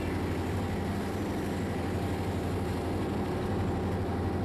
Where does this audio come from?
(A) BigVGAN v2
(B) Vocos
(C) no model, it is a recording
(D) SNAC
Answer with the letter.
C